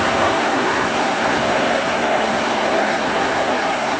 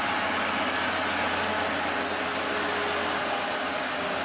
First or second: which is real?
second